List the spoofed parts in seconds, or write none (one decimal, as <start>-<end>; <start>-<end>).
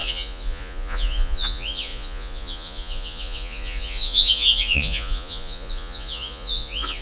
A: 0.0-7.0